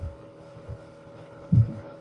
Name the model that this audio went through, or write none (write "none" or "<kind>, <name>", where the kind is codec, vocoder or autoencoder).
codec, HILCodec